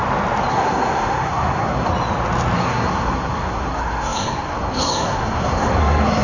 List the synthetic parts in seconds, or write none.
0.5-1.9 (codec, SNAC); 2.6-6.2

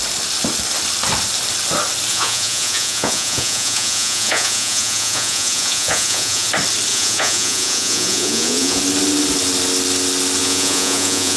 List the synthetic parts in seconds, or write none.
2.1-6.5 (vocoder, Vocos); 6.9-8.8; 10.4-11.4

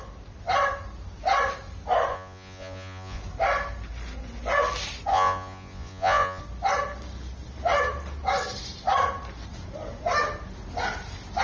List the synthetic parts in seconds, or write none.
2.1-3.2 (vocoder, Vocos); 5.1-6.4

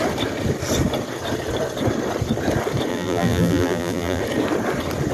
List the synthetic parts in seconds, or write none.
2.9-4.2 (vocoder, BigVGAN v2)

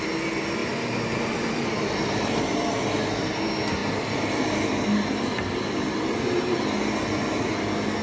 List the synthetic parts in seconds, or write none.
0.6-2.7 (vocoder, BigVGAN v2); 3.8-6.2

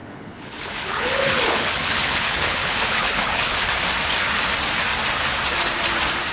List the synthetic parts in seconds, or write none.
0.0-3.8 (codec, HILCodec)

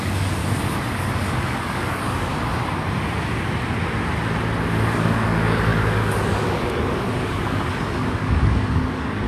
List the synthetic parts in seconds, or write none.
0.0-0.4 (codec, DAC); 1.3-2.3; 4.7-9.3

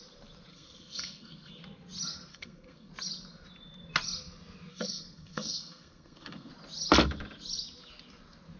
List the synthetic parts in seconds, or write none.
0.5-1.5 (codec, SNAC); 2.3-2.9; 4.7-6.5